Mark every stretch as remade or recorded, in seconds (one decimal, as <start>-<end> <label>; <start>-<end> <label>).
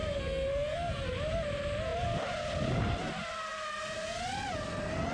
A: 0.0-1.1 remade; 1.1-5.1 recorded